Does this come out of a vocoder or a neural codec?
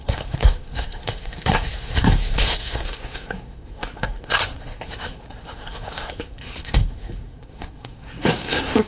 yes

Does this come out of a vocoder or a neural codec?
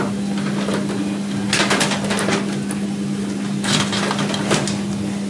no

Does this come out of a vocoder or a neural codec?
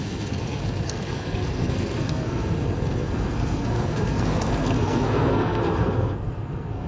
yes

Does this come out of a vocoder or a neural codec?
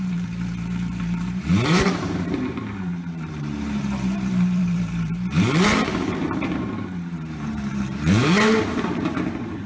yes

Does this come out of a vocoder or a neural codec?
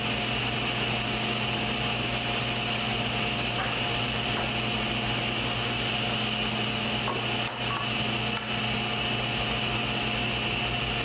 no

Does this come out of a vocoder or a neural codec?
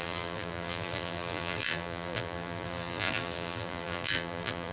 yes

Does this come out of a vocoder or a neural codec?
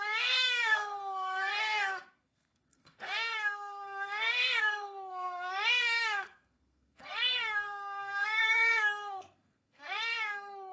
yes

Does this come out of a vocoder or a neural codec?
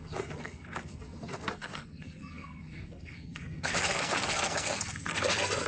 yes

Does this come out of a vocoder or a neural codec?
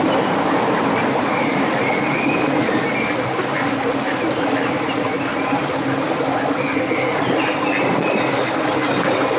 no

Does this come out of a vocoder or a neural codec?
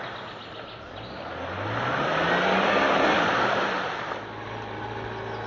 no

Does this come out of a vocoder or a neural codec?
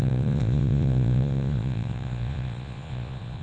yes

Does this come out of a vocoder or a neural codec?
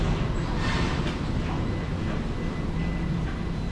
no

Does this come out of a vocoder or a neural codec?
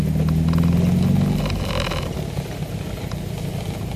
no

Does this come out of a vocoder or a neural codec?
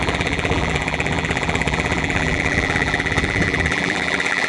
yes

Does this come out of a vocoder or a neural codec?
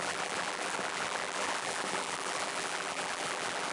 yes